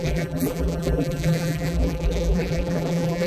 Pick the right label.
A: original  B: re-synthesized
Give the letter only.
B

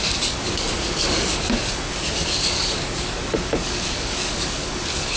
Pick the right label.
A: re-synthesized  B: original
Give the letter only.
A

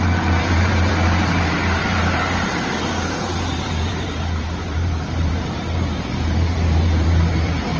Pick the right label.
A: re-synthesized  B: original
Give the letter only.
A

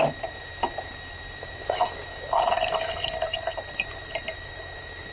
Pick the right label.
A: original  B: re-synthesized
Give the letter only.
B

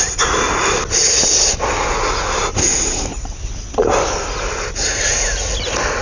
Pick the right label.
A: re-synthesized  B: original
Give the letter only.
B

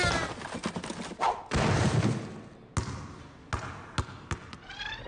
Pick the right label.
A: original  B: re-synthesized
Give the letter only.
A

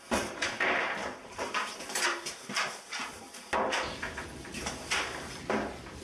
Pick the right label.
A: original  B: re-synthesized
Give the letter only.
A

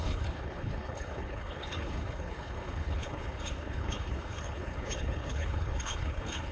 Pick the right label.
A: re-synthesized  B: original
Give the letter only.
A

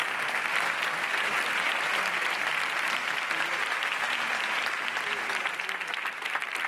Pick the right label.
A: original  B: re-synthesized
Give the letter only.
A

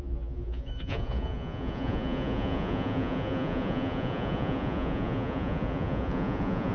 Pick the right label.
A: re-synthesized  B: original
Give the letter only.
A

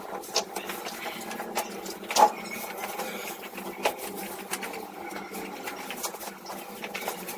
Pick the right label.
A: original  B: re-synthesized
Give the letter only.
A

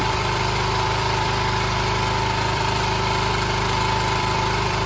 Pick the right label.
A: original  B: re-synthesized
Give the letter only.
B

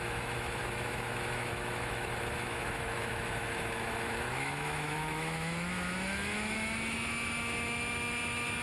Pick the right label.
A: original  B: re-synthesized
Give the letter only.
B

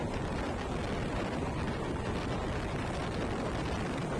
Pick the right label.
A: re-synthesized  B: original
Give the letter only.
B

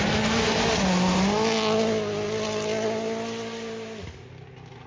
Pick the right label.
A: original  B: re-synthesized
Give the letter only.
A